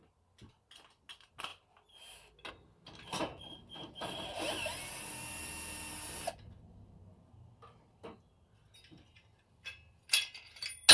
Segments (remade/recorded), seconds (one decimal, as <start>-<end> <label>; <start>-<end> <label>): 0.0-10.9 recorded